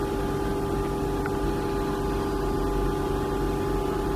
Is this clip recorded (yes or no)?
yes